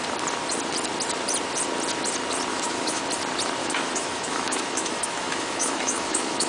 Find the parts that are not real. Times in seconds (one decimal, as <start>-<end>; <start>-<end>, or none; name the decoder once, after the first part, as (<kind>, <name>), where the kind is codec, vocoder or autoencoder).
2.5-3.0 (autoencoder, DAC-VAE); 3.6-6.5